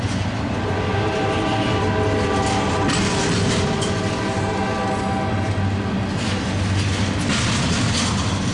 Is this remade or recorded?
recorded